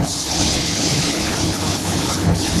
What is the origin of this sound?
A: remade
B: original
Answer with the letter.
A